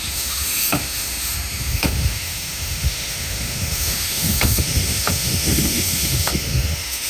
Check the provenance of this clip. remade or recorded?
remade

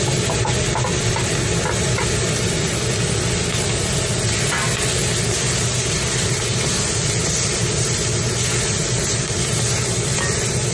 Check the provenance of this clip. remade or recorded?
recorded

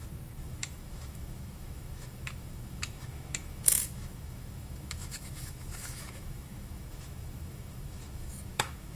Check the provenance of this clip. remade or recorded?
remade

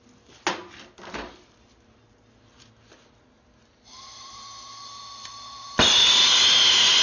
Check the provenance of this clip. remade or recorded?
recorded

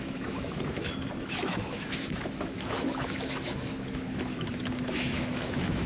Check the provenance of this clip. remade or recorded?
remade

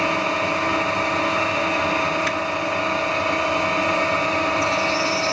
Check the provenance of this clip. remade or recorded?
recorded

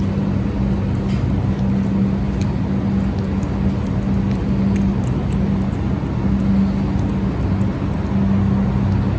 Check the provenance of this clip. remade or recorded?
recorded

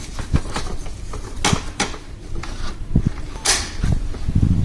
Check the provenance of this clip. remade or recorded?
recorded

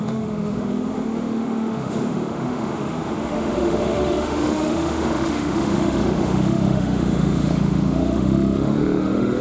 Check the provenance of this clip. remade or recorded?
remade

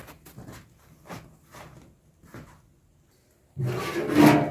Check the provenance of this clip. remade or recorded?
recorded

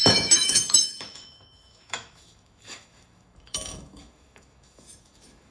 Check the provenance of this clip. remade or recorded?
remade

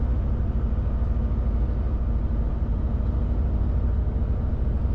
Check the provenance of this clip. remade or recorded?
recorded